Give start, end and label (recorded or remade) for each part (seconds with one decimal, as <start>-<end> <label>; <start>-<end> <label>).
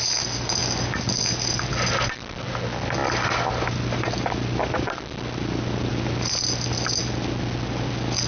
0.0-8.3 recorded